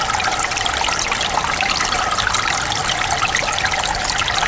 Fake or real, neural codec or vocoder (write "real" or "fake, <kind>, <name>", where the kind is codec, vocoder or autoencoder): real